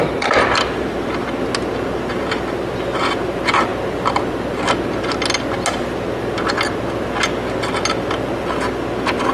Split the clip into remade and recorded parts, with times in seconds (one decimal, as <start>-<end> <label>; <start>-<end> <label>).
0.0-9.3 recorded